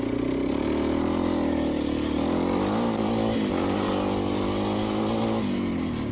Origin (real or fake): real